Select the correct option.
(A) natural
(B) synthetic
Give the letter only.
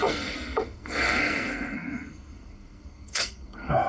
B